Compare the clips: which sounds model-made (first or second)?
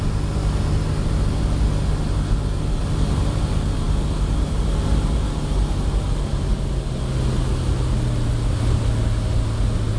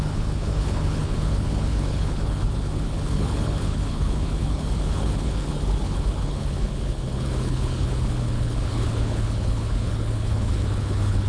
second